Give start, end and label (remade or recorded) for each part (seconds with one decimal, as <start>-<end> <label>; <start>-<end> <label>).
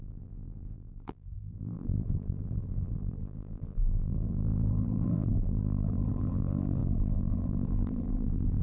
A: 0.0-8.6 remade